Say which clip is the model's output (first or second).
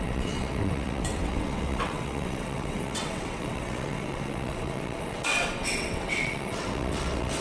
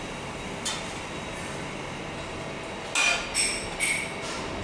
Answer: first